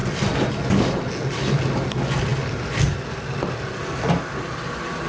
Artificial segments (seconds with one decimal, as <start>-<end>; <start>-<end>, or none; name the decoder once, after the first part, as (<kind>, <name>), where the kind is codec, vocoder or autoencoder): none